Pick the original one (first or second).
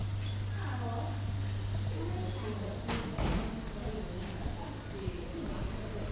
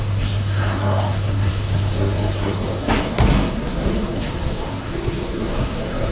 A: first